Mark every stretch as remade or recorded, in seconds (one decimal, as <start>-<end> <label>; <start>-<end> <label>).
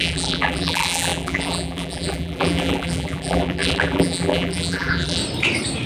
0.0-5.2 remade; 5.2-5.9 recorded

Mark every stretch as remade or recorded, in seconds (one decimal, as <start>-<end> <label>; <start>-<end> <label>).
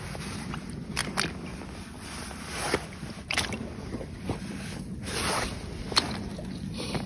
0.0-6.3 recorded; 6.3-7.1 remade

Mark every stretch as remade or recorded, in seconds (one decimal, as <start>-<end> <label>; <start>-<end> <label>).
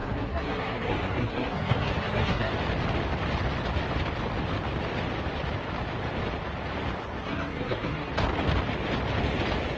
0.0-2.5 remade; 2.5-7.2 recorded; 7.2-8.1 remade; 8.1-9.8 recorded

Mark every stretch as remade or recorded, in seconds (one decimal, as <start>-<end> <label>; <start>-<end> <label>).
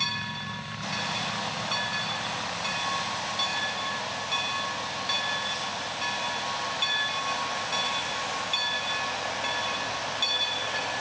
0.0-3.5 recorded; 3.5-4.2 remade; 4.2-11.0 recorded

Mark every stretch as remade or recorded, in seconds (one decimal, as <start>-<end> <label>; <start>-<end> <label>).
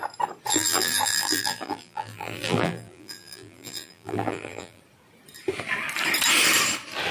0.0-0.5 recorded; 0.5-4.8 remade; 4.8-7.1 recorded